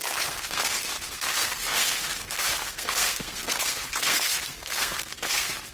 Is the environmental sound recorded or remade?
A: remade